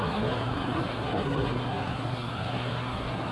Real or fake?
fake